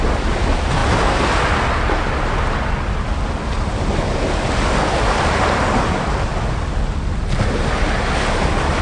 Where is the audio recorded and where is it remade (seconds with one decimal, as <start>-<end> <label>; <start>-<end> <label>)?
0.0-8.8 recorded

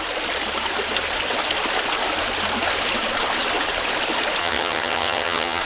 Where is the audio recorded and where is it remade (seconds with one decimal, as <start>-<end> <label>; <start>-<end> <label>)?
0.0-4.4 recorded; 4.4-5.6 remade

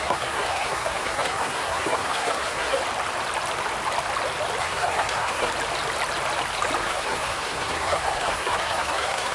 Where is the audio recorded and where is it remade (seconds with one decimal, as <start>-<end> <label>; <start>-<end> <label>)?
0.0-2.8 remade; 2.8-4.6 recorded; 4.6-5.5 remade; 5.5-6.8 recorded; 6.8-9.3 remade

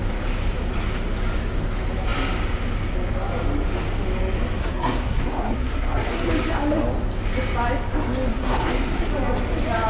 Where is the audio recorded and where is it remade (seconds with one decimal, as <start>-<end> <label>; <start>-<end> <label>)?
0.0-4.6 recorded; 4.6-6.3 remade; 6.3-8.3 recorded; 8.3-9.1 remade; 9.1-9.9 recorded

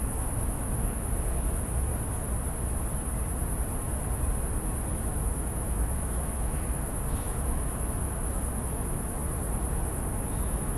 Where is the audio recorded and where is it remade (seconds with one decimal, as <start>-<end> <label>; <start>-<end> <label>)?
0.0-1.9 remade; 1.9-5.0 recorded; 5.0-9.2 remade; 9.2-9.9 recorded; 9.9-10.8 remade